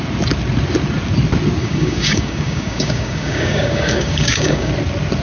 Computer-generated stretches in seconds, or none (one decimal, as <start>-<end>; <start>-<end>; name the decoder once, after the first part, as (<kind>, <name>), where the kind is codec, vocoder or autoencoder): 1.6-4.7 (codec, DAC)